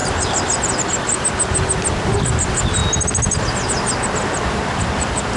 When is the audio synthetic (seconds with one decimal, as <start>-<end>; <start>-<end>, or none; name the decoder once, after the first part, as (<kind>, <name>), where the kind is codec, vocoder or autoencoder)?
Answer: none